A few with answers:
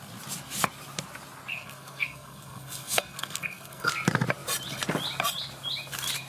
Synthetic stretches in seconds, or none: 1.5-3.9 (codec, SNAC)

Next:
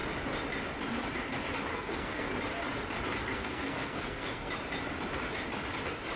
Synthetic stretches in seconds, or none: 1.7-2.3 (codec, SNAC); 3.2-4.5

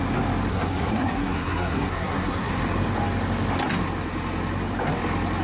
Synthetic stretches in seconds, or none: 0.5-2.5 (codec, SNAC)

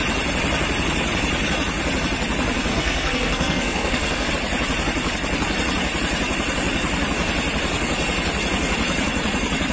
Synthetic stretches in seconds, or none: 2.7-4.3 (codec, SNAC)

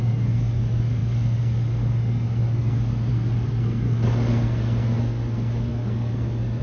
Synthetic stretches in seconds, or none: 0.0-6.6 (codec, SNAC)

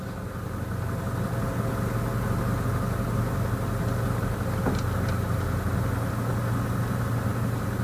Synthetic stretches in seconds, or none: none

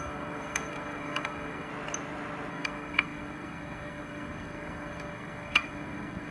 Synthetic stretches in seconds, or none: 0.0-1.7 (codec, SNAC); 2.5-6.3

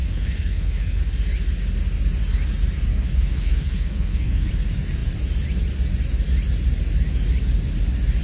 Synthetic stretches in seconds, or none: 0.0-1.0 (codec, SNAC); 2.9-4.5